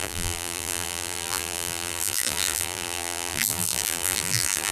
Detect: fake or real fake